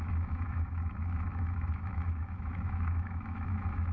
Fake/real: fake